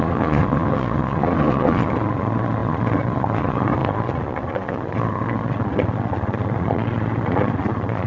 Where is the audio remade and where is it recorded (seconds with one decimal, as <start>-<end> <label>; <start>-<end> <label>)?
0.0-8.1 remade

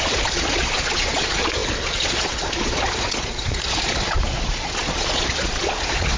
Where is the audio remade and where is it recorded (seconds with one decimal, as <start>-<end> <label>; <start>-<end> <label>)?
0.0-6.2 remade